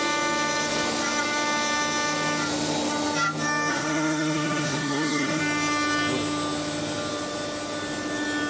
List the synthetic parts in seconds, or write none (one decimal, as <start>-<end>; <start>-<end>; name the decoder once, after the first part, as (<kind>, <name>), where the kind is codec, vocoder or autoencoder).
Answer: 3.7-5.4 (codec, SNAC)